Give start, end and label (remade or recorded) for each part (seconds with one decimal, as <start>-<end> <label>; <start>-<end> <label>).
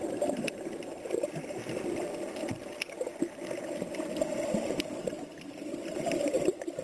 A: 0.0-6.8 recorded